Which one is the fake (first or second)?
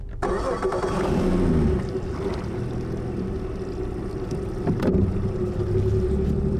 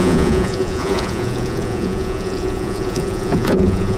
second